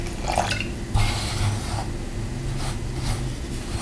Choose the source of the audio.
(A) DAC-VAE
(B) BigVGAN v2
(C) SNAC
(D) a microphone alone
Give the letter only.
D